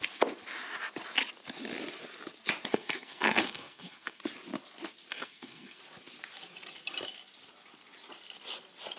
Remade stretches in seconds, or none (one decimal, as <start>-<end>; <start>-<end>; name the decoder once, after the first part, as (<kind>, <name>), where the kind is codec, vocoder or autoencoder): 2.7-4.2 (codec, SNAC); 5.1-5.8